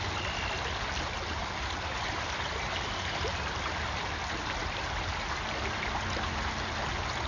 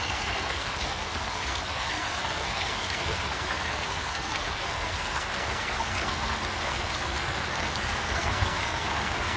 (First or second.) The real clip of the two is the first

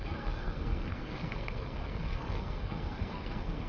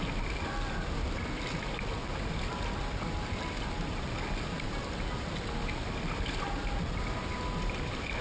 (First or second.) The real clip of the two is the second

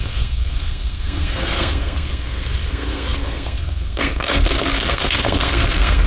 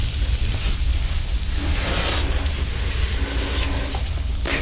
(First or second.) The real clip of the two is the second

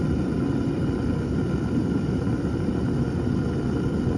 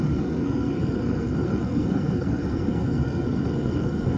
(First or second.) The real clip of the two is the first